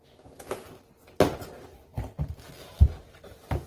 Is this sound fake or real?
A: real